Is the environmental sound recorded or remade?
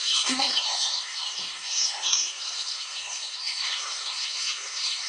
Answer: remade